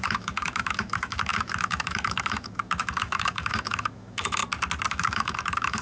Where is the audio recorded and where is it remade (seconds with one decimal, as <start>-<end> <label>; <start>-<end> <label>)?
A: 0.0-4.4 remade; 4.4-4.9 recorded; 4.9-5.8 remade